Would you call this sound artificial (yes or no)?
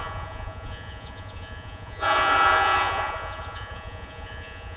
yes